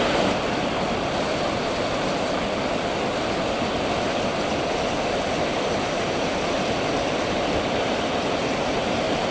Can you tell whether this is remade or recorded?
recorded